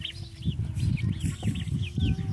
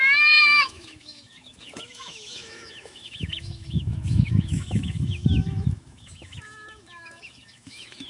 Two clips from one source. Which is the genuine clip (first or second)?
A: first